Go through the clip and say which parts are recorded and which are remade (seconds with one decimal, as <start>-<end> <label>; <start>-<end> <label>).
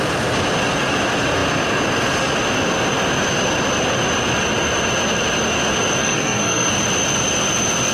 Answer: 0.0-6.0 recorded; 6.0-6.7 remade; 6.7-7.9 recorded